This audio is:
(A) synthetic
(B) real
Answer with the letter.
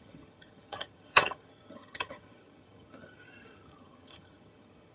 A